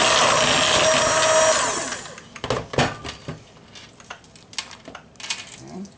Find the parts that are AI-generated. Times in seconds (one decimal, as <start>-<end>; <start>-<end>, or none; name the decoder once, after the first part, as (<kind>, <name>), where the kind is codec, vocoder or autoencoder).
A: none